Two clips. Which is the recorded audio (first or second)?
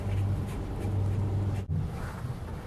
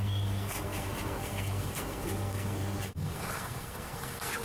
first